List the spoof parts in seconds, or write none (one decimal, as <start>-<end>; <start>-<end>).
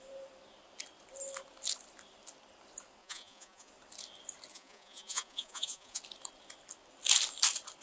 3.0-3.7; 4.5-6.0